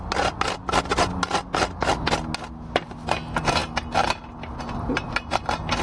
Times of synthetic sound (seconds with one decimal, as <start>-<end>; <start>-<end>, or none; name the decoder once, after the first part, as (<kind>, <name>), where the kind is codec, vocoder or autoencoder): none